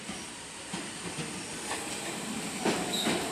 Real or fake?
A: fake